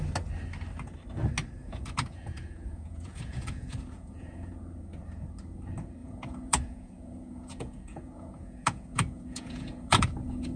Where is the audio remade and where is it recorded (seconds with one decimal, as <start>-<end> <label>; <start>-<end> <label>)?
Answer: 0.0-1.6 recorded; 1.6-4.5 remade; 4.5-6.0 recorded; 6.0-10.6 remade